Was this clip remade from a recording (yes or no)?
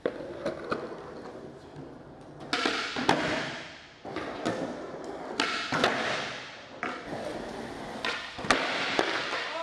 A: no